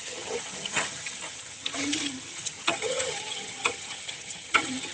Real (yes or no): no